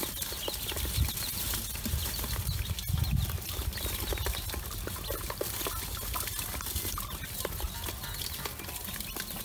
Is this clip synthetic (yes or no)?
no